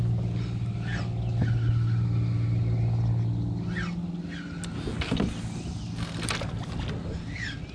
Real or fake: real